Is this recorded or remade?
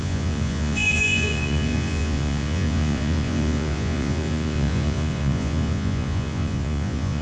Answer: remade